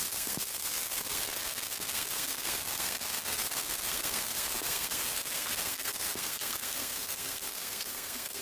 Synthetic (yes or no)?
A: yes